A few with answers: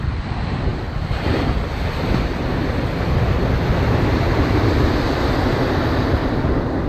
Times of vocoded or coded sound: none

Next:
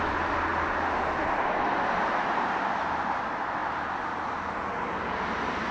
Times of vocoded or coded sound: none

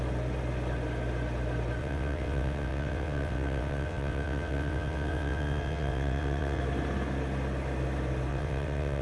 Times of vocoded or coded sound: 1.8-6.6 (vocoder, WaveNeXt); 8.3-9.0

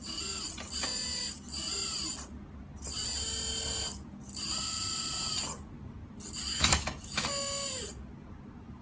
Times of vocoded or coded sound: 6.5-7.3 (autoencoder, DAC-VAE)

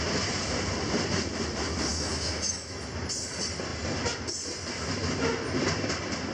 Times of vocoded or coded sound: 1.9-2.9 (autoencoder, DAC-VAE)